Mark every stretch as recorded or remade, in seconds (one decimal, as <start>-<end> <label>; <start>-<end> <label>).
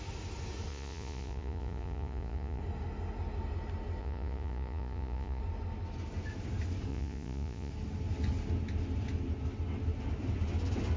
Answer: 0.0-0.7 recorded; 0.7-2.6 remade; 2.6-4.0 recorded; 4.0-5.4 remade; 5.4-6.9 recorded; 6.9-7.7 remade; 7.7-11.0 recorded